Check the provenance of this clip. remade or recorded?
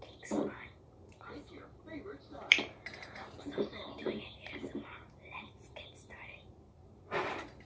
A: remade